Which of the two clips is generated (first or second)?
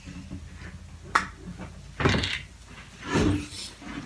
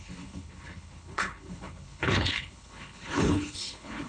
second